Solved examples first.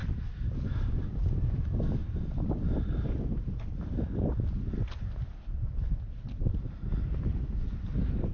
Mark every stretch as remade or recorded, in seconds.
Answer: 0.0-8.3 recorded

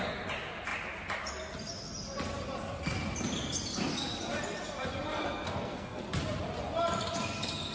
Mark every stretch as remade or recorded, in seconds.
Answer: 0.0-5.1 recorded; 5.1-6.0 remade; 6.0-7.7 recorded

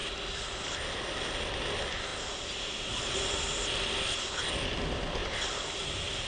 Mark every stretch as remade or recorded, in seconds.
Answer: 0.0-6.3 recorded

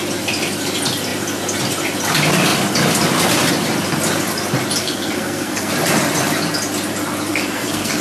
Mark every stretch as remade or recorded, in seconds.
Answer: 0.0-4.8 recorded; 4.8-5.7 remade; 5.7-7.3 recorded; 7.3-8.0 remade

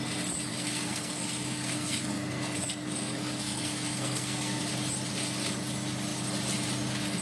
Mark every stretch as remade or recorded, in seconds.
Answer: 0.0-0.5 recorded; 0.5-4.6 remade; 4.6-7.2 recorded

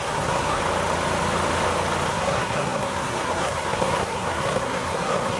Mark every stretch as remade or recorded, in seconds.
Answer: 0.0-0.6 remade; 0.6-2.1 recorded; 2.1-5.4 remade

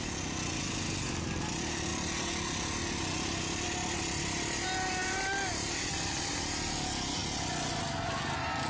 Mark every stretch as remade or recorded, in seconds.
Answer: 0.0-8.7 recorded